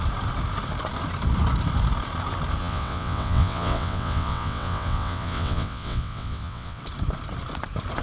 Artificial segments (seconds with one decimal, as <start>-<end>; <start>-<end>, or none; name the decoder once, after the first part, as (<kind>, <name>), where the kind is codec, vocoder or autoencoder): 2.6-6.8 (vocoder, WaveNeXt)